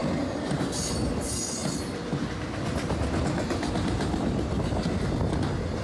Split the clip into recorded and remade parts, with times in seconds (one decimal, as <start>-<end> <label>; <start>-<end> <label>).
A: 0.0-5.8 recorded